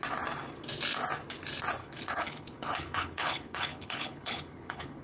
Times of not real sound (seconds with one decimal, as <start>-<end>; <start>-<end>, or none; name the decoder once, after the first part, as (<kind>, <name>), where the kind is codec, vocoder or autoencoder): 1.8-5.0 (codec, HILCodec)